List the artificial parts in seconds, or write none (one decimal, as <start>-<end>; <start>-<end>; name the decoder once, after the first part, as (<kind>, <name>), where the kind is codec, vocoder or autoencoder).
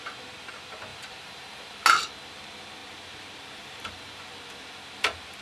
0.9-1.7 (vocoder, BigVGAN v2); 2.8-4.2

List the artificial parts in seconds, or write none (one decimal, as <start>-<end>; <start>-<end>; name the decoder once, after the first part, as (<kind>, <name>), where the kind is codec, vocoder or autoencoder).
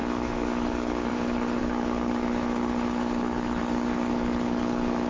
0.0-5.1 (codec, HILCodec)